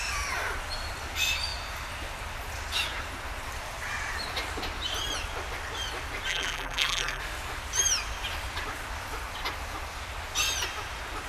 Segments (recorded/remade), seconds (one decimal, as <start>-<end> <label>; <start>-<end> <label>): 0.0-6.3 recorded; 6.3-7.2 remade; 7.2-11.3 recorded